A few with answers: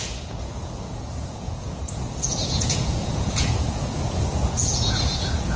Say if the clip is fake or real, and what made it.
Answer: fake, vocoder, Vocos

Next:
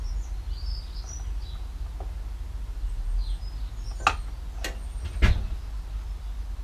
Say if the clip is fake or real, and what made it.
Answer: real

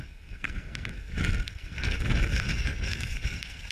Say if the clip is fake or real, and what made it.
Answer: fake, codec, SNAC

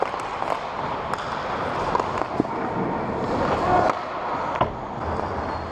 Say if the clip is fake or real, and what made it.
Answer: real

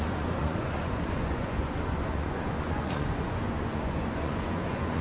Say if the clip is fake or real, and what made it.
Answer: fake, vocoder, Vocos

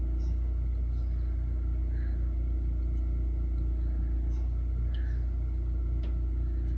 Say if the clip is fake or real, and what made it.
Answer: real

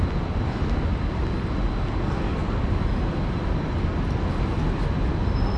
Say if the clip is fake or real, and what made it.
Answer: real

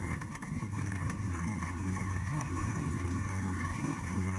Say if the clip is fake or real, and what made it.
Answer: fake, codec, SNAC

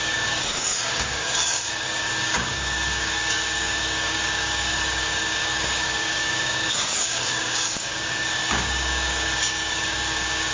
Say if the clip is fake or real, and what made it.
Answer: fake, codec, DAC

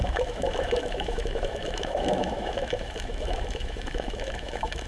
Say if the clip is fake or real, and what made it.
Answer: fake, autoencoder, DAC-VAE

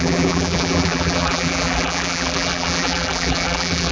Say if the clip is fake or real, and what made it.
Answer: fake, vocoder, BigVGAN v2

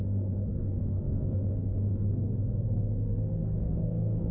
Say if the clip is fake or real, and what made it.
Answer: fake, codec, SNAC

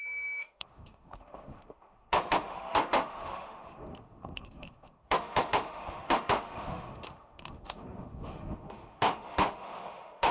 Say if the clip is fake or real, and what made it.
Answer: fake, autoencoder, DAC-VAE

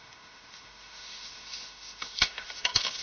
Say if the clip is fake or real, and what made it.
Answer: fake, autoencoder, DAC-VAE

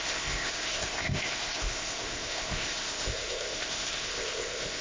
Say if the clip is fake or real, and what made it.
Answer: fake, codec, ZipCodec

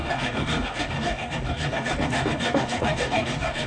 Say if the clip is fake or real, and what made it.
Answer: fake, codec, DAC